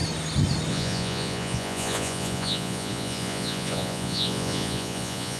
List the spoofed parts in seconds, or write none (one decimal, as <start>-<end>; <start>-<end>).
0.7-5.4